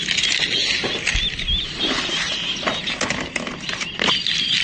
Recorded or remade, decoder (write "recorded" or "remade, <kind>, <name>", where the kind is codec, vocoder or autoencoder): recorded